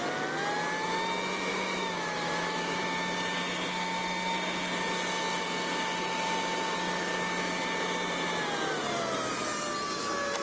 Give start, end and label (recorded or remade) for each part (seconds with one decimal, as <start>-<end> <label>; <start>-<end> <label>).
0.0-1.5 recorded; 1.5-2.8 remade; 2.8-10.4 recorded